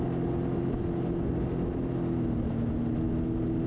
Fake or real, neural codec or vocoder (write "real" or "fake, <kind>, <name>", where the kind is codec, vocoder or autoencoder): real